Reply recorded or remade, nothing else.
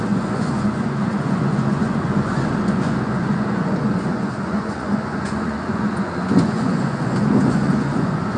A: remade